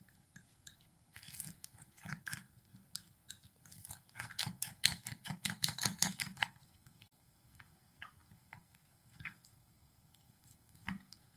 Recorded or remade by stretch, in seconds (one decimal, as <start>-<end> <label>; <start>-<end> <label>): 0.0-11.4 remade